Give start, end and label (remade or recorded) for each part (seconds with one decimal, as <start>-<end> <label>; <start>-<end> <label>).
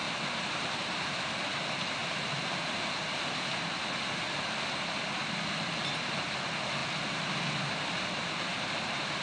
0.0-1.3 remade; 1.3-2.0 recorded; 2.0-3.6 remade; 3.6-9.2 recorded